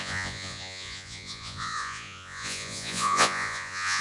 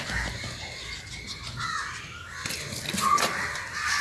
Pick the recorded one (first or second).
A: second